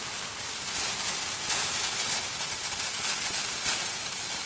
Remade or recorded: recorded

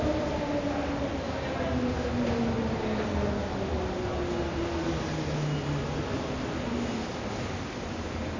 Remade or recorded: recorded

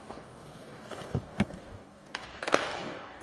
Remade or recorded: remade